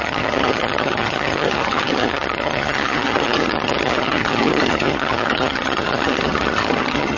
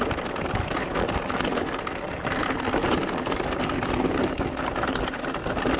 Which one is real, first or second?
second